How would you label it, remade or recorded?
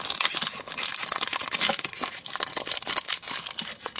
recorded